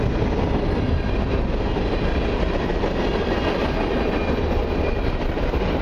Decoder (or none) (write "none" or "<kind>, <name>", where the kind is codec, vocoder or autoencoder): none